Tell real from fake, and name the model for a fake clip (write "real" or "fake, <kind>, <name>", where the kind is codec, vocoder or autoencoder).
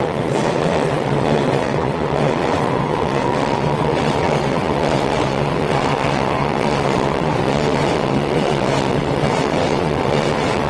fake, vocoder, WaveNeXt